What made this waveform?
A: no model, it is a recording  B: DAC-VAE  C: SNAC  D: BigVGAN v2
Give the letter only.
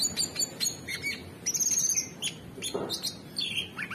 A